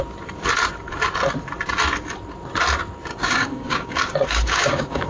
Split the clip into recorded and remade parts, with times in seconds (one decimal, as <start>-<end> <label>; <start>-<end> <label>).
0.0-3.1 recorded; 3.1-5.1 remade